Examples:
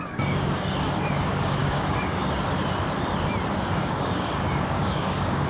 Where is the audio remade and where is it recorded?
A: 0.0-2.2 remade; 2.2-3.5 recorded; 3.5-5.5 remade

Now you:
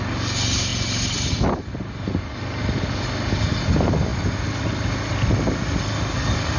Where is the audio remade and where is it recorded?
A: 0.0-6.6 recorded